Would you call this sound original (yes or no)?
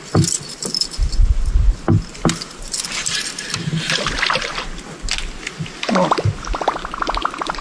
yes